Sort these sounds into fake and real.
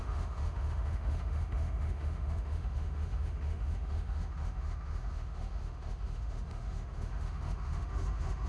fake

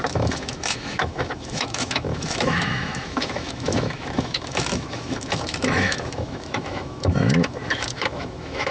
fake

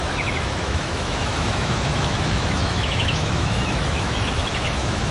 fake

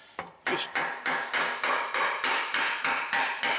real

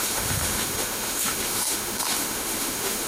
fake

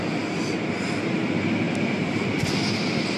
real